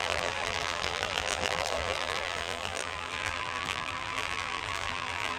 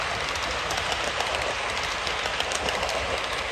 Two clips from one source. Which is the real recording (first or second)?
second